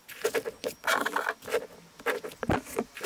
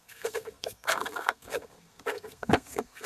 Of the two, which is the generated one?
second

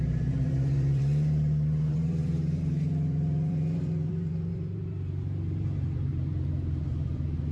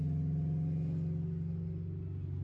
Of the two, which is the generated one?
first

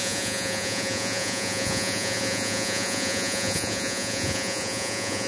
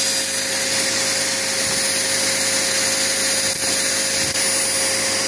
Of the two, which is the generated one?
first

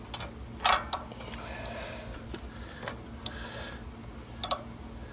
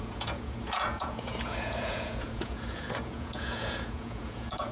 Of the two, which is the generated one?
second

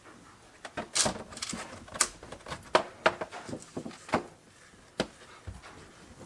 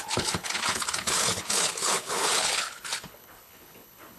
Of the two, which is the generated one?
second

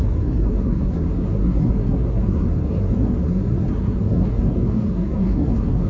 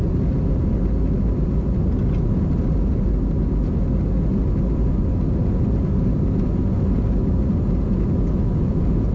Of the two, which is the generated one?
first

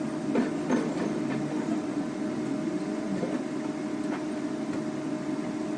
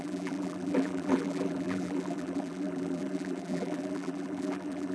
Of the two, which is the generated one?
second